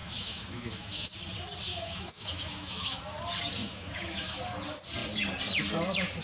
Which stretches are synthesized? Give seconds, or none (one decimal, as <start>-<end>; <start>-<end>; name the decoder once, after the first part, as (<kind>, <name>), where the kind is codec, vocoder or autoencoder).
0.0-1.1 (autoencoder, DAC-VAE); 1.7-3.0; 3.6-4.4